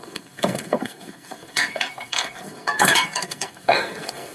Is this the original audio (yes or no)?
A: no